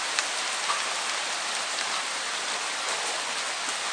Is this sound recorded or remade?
recorded